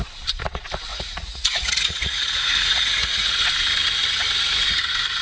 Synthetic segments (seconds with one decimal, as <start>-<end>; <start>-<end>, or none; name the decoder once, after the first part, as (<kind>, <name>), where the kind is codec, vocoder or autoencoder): 0.9-3.3 (vocoder, Vocos)